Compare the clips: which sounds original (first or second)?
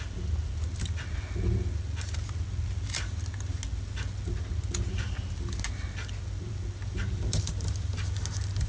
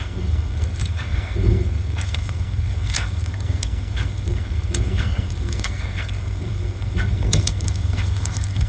first